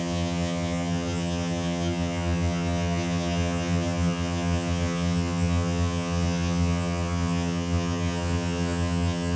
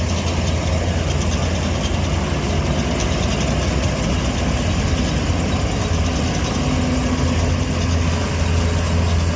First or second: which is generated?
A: first